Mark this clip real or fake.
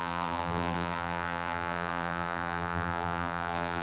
fake